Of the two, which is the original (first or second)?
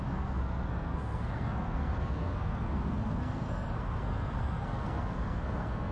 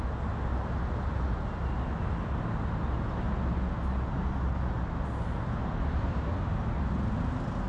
second